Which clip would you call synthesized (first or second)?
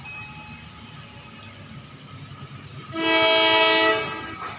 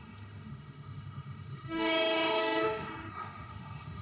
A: second